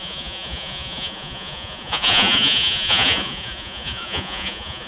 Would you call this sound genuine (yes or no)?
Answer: no